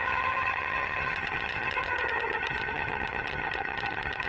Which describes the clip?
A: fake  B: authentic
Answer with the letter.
A